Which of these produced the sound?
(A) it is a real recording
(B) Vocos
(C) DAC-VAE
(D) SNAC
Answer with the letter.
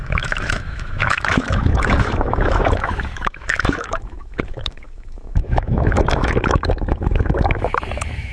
C